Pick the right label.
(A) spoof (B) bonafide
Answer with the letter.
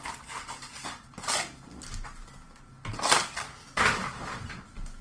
B